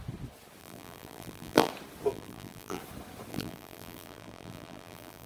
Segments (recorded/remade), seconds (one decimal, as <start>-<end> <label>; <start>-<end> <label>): 0.0-0.6 recorded; 0.6-1.7 remade; 1.7-2.1 recorded; 2.1-2.8 remade; 2.8-3.3 recorded; 3.3-5.3 remade